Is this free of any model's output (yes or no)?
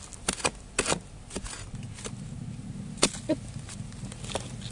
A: yes